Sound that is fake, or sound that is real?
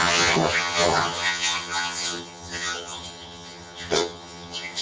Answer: fake